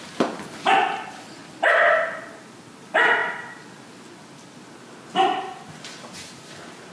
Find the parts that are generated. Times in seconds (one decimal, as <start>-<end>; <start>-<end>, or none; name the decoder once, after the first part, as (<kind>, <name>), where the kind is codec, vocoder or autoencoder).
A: 1.4-2.2 (vocoder, BigVGAN v2)